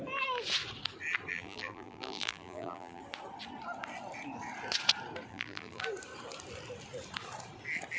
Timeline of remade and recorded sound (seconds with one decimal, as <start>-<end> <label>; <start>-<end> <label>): 0.0-1.3 recorded; 1.3-3.0 remade; 3.0-5.3 recorded; 5.3-5.8 remade; 5.8-8.0 recorded

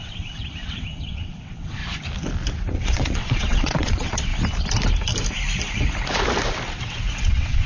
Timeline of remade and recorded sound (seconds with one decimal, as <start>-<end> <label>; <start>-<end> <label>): 0.0-1.8 remade; 1.8-2.5 recorded; 2.5-4.3 remade; 4.3-6.7 recorded; 6.7-7.7 remade

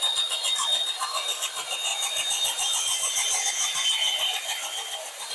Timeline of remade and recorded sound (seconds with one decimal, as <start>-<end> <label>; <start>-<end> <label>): 0.0-5.3 recorded

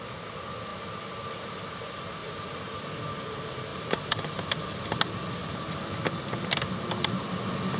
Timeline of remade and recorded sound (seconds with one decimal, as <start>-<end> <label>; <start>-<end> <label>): 0.0-2.2 recorded; 2.2-2.8 remade; 2.8-3.7 recorded; 3.7-4.9 remade; 4.9-7.8 recorded

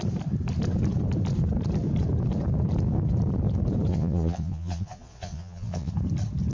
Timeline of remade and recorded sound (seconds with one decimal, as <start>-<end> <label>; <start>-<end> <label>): 0.0-3.9 recorded; 3.9-5.9 remade; 5.9-6.5 recorded

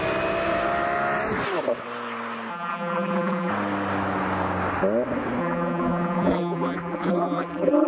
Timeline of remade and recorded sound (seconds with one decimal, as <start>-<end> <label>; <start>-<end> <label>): 0.0-2.5 recorded; 2.5-3.5 remade; 3.5-5.4 recorded; 5.4-7.9 remade

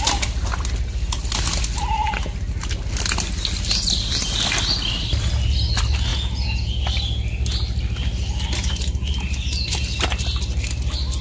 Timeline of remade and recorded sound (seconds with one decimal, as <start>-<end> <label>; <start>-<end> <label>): 0.0-6.1 recorded; 6.1-6.8 remade; 6.8-11.2 recorded

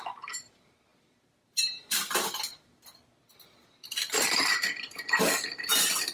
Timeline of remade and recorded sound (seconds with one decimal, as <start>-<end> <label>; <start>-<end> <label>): 0.0-3.0 remade; 3.0-4.2 recorded; 4.2-6.1 remade